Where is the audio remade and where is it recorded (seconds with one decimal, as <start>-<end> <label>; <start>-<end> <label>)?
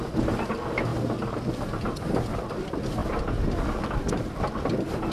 0.0-5.1 recorded